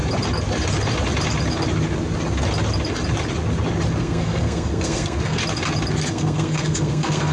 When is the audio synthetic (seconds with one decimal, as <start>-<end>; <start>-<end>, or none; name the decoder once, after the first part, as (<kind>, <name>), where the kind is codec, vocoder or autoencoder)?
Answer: 4.0-5.4 (codec, SNAC); 6.1-7.3